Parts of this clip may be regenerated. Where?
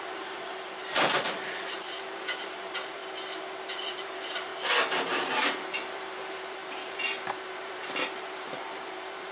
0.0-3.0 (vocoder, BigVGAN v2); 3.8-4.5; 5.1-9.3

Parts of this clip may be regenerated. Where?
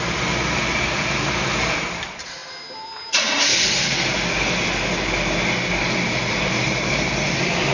0.0-2.4 (vocoder, BigVGAN v2); 3.1-3.5; 6.3-7.7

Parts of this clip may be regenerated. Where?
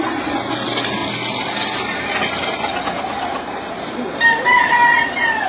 3.3-4.7 (vocoder, BigVGAN v2)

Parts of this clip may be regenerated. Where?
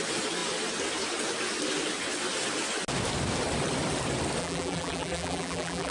4.4-5.9 (vocoder, BigVGAN v2)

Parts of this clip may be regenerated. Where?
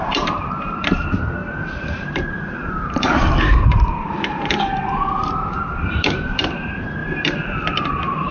0.0-1.0 (vocoder, BigVGAN v2); 1.8-8.3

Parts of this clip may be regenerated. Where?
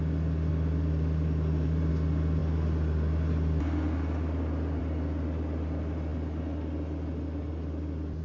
0.5-1.9 (vocoder, BigVGAN v2)